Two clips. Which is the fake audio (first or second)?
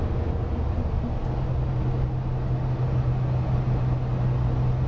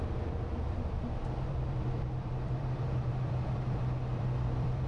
second